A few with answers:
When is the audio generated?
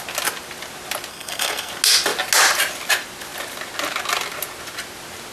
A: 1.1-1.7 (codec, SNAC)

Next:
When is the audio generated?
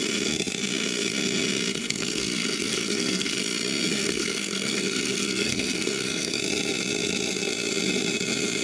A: 1.7-3.4 (codec, SNAC); 3.9-6.4